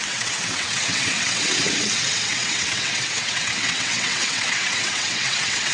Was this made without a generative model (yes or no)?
no